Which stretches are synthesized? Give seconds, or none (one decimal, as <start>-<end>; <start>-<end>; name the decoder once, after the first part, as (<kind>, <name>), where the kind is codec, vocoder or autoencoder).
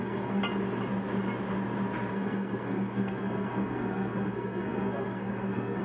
0.0-0.4 (codec, SNAC); 2.1-5.8